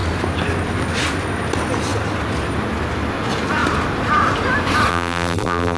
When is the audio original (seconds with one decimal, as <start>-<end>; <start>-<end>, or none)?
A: 0.0-4.9